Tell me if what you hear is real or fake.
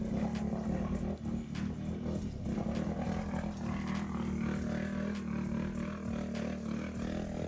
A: real